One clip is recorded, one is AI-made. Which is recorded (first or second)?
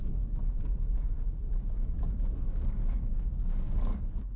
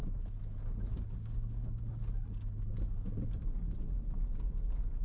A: second